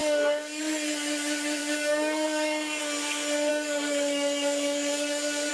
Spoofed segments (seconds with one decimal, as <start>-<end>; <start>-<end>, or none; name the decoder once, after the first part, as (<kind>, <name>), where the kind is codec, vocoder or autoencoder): 0.0-0.6 (codec, DAC); 1.6-2.8; 3.5-5.5